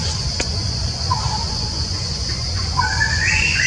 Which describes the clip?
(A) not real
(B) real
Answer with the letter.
A